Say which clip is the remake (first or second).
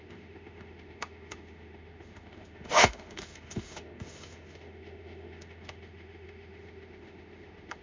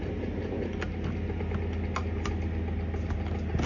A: first